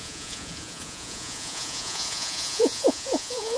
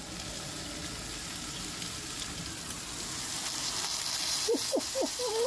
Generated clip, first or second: first